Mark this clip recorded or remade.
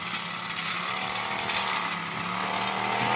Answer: recorded